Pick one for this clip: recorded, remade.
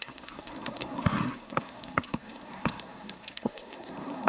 remade